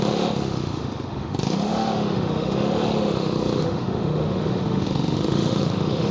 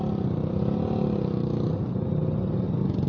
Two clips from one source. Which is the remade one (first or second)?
first